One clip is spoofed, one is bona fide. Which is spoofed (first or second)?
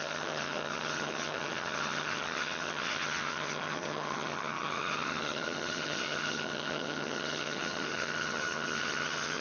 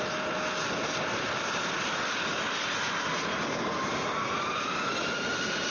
first